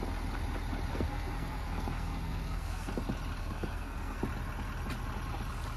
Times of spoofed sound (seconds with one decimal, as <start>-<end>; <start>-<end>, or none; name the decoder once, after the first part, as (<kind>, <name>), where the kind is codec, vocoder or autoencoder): 0.9-2.9 (codec, SNAC); 3.4-4.2